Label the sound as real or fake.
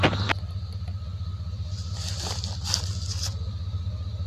real